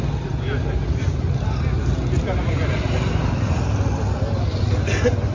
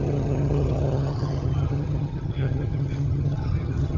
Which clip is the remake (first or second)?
second